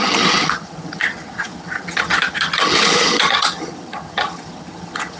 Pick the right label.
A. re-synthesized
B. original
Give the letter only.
A